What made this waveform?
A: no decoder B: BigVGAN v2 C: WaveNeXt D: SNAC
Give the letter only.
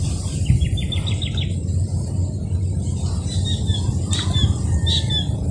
A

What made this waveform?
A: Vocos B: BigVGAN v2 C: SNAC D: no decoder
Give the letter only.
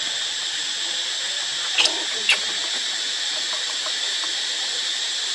D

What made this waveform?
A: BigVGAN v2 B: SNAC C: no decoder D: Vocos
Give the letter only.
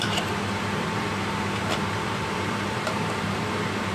A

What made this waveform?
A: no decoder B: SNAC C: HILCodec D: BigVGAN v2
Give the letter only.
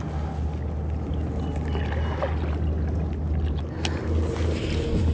A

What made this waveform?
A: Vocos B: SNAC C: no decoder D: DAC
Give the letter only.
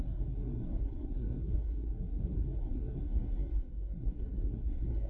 B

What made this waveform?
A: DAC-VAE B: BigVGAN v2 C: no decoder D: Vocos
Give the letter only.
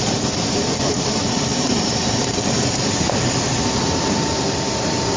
B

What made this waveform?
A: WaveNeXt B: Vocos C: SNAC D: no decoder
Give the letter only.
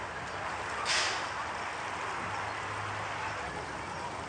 D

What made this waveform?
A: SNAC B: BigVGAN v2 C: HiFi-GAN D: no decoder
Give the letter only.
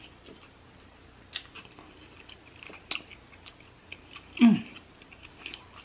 D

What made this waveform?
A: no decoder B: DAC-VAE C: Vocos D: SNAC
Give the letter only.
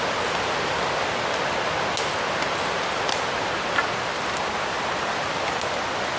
A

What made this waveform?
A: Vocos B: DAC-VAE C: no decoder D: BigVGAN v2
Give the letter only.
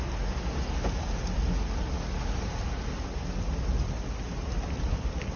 C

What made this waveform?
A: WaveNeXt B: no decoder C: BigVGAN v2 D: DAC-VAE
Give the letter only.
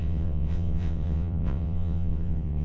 A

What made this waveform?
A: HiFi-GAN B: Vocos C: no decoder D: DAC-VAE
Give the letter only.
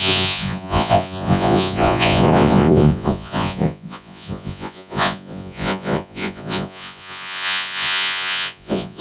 B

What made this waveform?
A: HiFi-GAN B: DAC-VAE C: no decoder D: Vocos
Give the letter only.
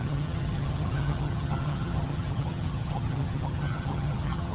A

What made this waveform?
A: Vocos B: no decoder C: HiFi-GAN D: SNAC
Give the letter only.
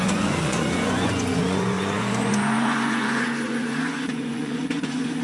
A